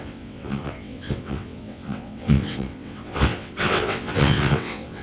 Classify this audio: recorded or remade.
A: remade